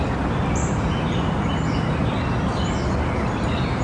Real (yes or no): yes